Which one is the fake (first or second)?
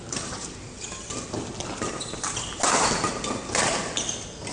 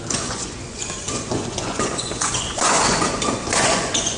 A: second